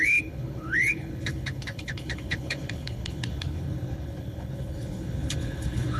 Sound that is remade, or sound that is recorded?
remade